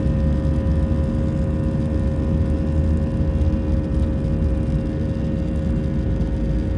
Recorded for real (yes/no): yes